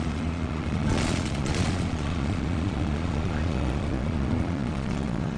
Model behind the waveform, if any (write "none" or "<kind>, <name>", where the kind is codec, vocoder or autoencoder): vocoder, Vocos